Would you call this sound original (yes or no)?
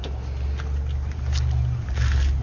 yes